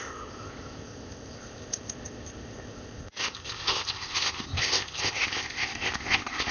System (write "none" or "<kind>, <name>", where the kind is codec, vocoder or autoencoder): codec, ZipCodec